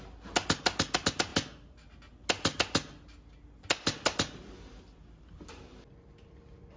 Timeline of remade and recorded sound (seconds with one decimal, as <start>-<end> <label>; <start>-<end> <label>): 0.0-6.8 recorded